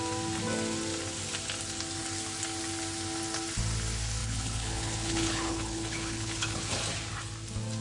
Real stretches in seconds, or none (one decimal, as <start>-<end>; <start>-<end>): 0.0-4.2; 6.7-7.8